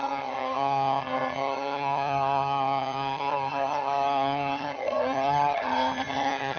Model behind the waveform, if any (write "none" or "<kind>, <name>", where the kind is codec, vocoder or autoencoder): vocoder, HiFi-GAN